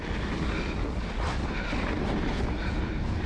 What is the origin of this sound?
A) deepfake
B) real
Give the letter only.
B